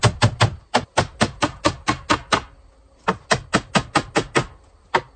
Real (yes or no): yes